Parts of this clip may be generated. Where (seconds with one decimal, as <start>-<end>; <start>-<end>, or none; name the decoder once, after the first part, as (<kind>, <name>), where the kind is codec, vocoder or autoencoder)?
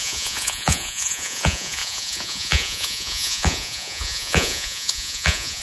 0.0-5.6 (vocoder, Vocos)